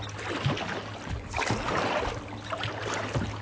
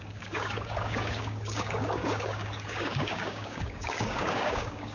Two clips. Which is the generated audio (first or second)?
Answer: second